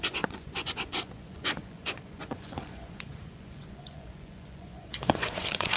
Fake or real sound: fake